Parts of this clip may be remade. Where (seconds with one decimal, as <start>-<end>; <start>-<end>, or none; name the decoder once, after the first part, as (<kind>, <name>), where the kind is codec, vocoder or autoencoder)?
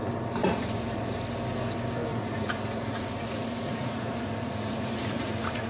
0.4-1.2 (vocoder, Vocos); 2.1-5.7